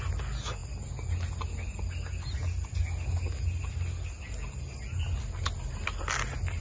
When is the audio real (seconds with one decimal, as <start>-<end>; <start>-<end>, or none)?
0.0-6.6